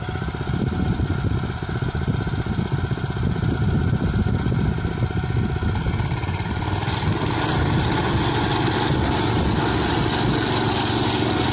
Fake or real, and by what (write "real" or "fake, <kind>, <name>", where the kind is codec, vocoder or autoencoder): real